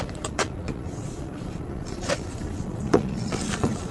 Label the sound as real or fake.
fake